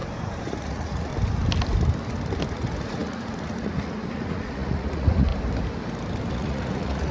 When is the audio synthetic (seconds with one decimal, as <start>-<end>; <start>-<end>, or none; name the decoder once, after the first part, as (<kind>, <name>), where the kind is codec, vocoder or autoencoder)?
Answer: 0.5-1.1 (vocoder, Vocos); 2.5-5.3; 6.3-7.1